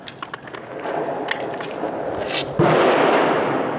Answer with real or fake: real